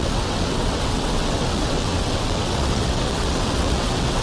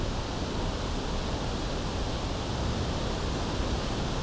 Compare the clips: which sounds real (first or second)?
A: second